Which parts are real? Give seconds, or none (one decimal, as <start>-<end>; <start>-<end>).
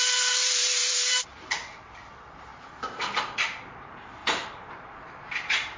2.5-3.7